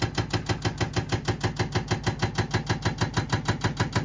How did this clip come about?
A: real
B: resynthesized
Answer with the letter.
A